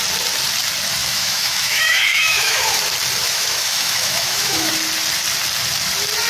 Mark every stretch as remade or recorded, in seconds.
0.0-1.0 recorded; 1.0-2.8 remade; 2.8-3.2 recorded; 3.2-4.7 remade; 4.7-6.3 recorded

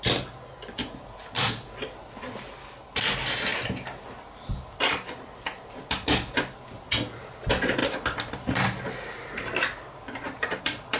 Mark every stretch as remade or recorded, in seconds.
0.0-11.0 recorded

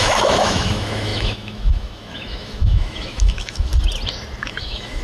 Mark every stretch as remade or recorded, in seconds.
0.0-3.7 remade; 3.7-4.4 recorded; 4.4-5.0 remade

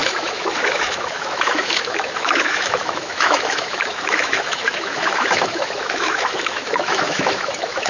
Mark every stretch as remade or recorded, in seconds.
0.0-7.9 remade

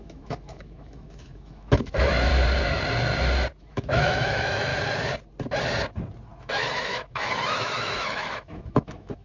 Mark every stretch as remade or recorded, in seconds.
0.0-2.3 remade; 2.3-3.6 recorded; 3.6-4.7 remade; 4.7-6.4 recorded; 6.4-9.2 remade

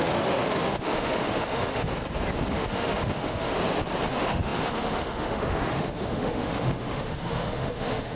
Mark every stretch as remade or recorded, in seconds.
0.0-1.9 remade; 1.9-2.5 recorded; 2.5-3.5 remade; 3.5-4.1 recorded; 4.1-8.2 remade

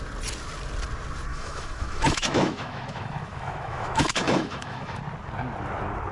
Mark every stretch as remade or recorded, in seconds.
0.0-1.3 recorded; 1.3-5.0 remade; 5.0-6.1 recorded

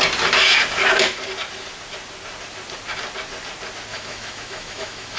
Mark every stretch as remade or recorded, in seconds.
0.0-3.9 recorded; 3.9-5.2 remade